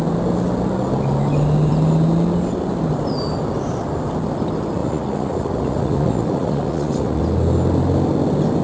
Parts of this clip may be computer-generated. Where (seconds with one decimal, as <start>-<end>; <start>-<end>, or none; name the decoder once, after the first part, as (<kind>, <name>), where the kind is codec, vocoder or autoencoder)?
4.8-7.2 (vocoder, Vocos)